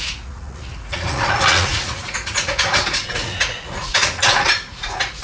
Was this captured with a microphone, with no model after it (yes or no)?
no